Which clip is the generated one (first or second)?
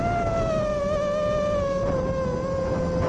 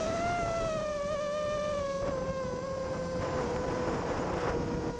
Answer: second